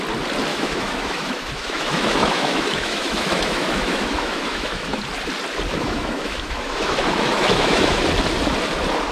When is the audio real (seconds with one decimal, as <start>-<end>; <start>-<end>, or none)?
0.0-0.5; 5.0-5.7; 8.0-9.1